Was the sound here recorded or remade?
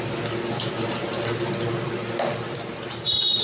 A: recorded